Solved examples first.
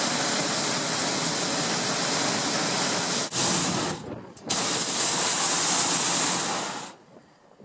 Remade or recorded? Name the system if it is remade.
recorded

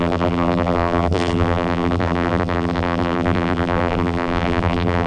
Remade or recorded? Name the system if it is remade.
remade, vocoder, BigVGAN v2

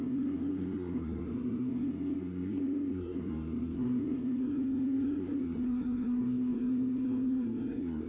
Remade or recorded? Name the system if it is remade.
remade, codec, SNAC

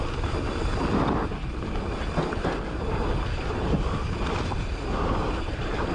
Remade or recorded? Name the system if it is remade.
recorded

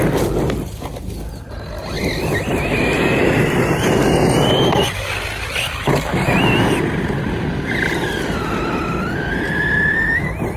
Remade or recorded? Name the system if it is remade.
recorded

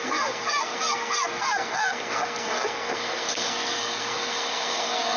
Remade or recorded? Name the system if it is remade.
remade, codec, SNAC